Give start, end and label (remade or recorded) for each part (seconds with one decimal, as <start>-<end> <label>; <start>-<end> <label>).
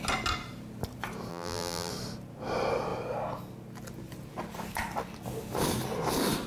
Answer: 0.0-1.3 recorded; 1.3-1.9 remade; 1.9-6.5 recorded